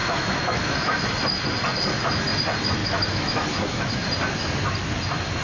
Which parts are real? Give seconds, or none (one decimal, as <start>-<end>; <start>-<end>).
1.0-2.8; 4.1-5.4